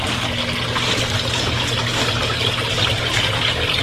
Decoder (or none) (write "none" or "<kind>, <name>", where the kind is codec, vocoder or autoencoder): none